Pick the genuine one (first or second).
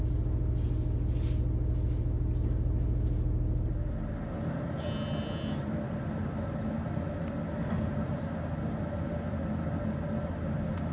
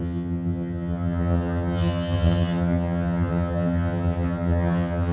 first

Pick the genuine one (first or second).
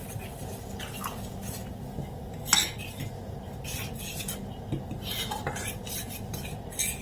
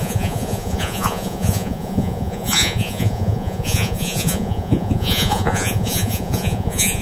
first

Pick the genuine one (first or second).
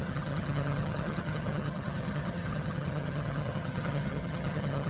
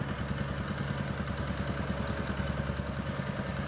second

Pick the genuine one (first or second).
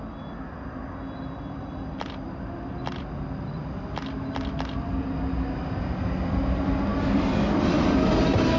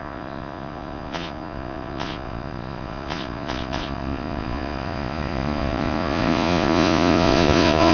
first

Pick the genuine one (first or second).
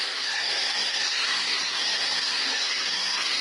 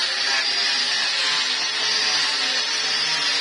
second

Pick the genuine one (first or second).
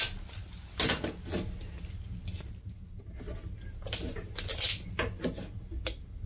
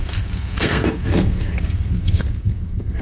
first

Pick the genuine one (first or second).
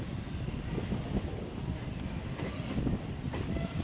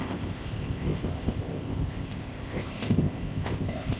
first